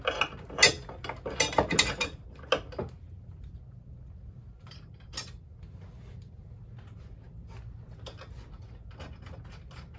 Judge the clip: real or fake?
real